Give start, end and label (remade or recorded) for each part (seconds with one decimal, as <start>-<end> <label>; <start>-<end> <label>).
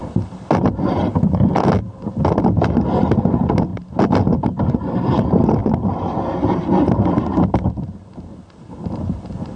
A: 0.0-3.7 remade; 3.7-4.8 recorded; 4.8-5.6 remade; 5.6-8.6 recorded; 8.6-9.6 remade